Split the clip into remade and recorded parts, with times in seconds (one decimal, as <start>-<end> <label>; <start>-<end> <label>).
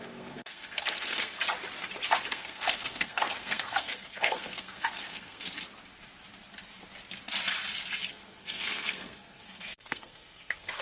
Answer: 0.0-1.3 remade; 1.3-2.3 recorded; 2.3-5.4 remade; 5.4-8.1 recorded; 8.1-10.8 remade